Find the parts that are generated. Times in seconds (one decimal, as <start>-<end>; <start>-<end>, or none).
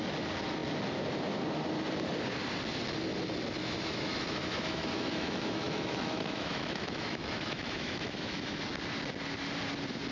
3.6-8.6